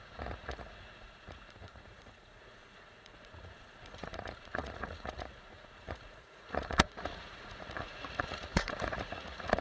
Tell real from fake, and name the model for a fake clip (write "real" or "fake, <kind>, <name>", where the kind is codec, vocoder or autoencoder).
fake, vocoder, Vocos